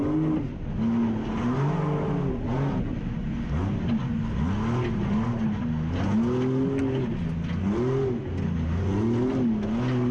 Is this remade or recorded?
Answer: recorded